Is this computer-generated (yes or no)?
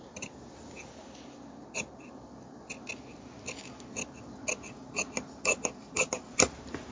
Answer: no